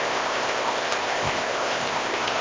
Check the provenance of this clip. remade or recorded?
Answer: remade